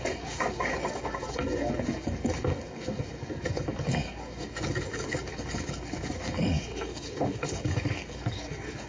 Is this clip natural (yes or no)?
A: no